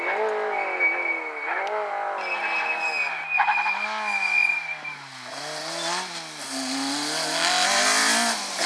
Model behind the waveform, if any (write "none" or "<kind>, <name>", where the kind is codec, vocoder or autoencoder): none